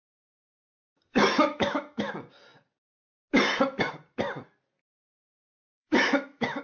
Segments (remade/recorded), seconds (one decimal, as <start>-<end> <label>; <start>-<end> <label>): 0.0-1.1 recorded; 1.1-2.1 remade; 2.1-5.6 recorded; 5.6-6.6 remade